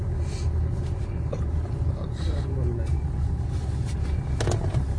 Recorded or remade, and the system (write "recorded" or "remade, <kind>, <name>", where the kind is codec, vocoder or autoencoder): recorded